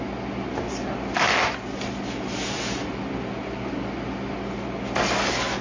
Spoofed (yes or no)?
no